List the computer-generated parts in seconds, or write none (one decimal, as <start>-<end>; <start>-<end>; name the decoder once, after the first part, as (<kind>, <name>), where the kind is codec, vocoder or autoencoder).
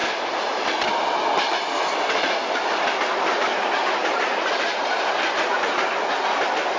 none